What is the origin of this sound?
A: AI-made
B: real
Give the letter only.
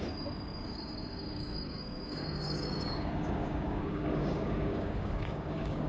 A